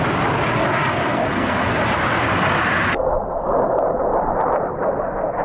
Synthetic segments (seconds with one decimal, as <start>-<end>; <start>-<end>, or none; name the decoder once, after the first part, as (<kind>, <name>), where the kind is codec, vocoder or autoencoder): 1.1-1.8 (codec, SNAC)